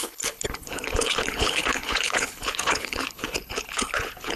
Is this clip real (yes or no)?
no